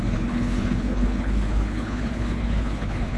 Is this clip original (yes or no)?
no